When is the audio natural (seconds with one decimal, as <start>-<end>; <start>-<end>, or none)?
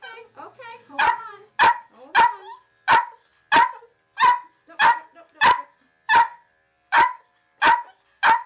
0.0-0.7; 1.5-8.5